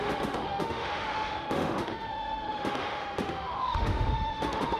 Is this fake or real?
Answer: fake